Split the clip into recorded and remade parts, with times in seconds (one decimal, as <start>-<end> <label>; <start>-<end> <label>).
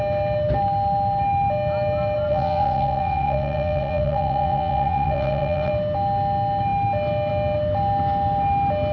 0.0-2.3 recorded; 2.3-5.7 remade; 5.7-8.9 recorded